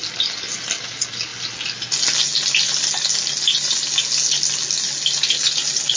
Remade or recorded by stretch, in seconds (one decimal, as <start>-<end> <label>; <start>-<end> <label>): 0.0-6.0 recorded

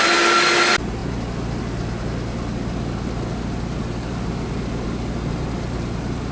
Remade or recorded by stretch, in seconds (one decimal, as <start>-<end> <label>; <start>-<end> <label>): 0.0-6.3 recorded

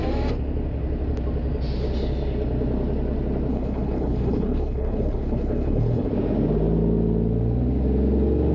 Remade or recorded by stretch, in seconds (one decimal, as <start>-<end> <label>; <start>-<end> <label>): 0.0-3.5 recorded; 3.5-6.1 remade; 6.1-8.5 recorded

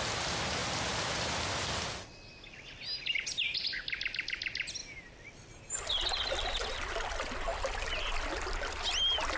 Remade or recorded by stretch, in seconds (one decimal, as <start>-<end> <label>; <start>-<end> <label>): 0.0-9.4 recorded